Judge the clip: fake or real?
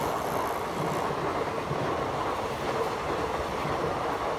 real